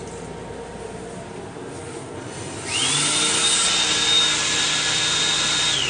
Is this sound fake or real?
real